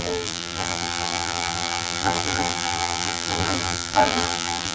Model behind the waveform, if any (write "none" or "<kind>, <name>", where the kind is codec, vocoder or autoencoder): vocoder, BigVGAN v2